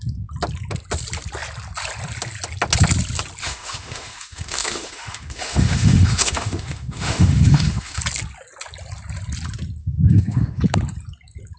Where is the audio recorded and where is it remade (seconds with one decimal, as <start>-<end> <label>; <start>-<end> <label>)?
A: 0.0-3.4 recorded; 3.4-8.0 remade; 8.0-9.8 recorded; 9.8-10.6 remade; 10.6-11.6 recorded